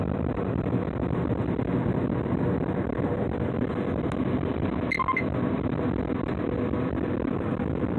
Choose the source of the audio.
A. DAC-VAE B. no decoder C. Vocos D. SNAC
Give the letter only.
B